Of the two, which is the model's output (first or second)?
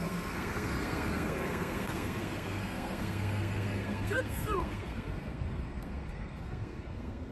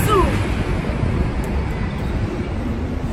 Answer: first